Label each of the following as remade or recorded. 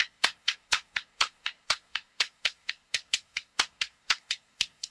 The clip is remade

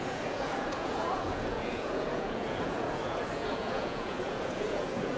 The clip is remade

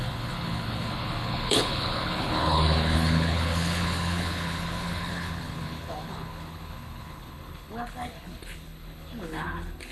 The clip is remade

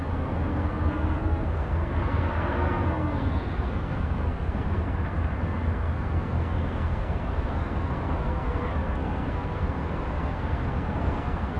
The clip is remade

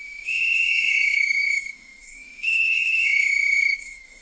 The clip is remade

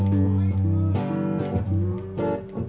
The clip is recorded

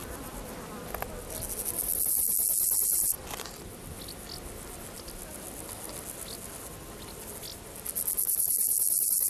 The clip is recorded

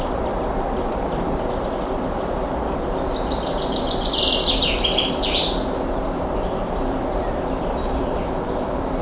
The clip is remade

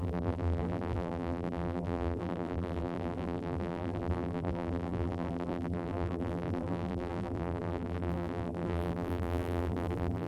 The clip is remade